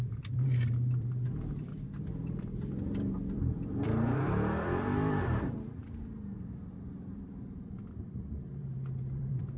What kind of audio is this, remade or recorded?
remade